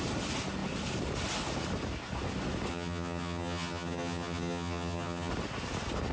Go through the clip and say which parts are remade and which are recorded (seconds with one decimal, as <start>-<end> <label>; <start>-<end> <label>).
0.0-2.7 recorded; 2.7-5.3 remade; 5.3-6.1 recorded

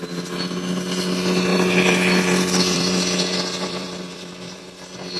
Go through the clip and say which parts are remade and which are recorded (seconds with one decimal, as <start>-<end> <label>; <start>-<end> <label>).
0.0-1.5 recorded; 1.5-4.6 remade; 4.6-5.2 recorded